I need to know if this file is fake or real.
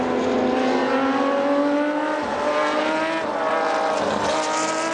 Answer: real